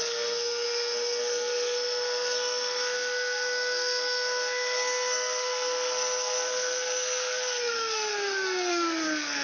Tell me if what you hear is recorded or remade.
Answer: remade